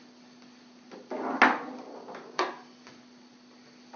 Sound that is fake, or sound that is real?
real